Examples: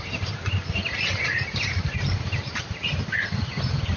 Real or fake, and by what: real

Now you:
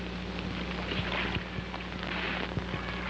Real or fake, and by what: real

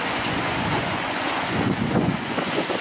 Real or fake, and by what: fake, vocoder, Vocos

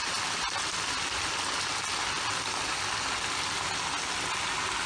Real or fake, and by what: real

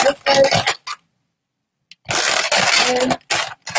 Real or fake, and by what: real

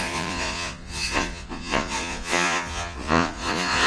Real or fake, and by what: fake, vocoder, Vocos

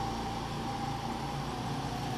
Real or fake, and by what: real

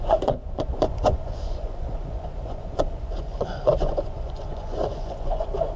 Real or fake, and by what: fake, vocoder, Vocos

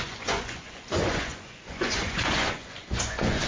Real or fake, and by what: fake, vocoder, Vocos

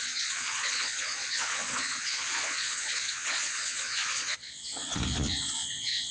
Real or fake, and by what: fake, vocoder, Vocos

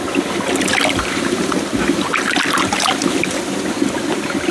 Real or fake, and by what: real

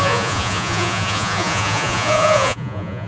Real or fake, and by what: fake, vocoder, Vocos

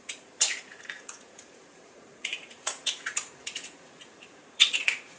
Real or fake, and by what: fake, vocoder, Vocos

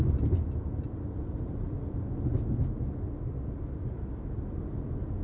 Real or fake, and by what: real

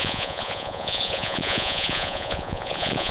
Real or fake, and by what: fake, vocoder, Vocos